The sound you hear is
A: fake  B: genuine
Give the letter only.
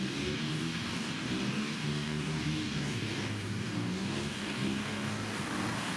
A